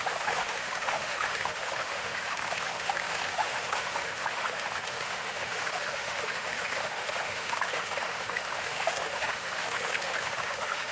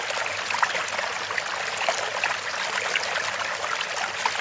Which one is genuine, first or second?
second